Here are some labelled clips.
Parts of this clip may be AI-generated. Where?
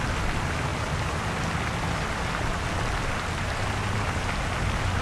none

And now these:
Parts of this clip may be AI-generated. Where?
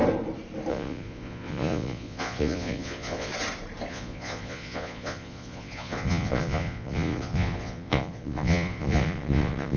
0.7-3.3 (vocoder, Vocos); 3.9-9.8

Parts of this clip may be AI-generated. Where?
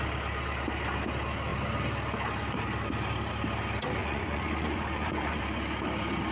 4.0-5.4 (vocoder, Vocos)